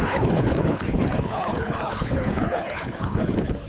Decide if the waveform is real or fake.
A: fake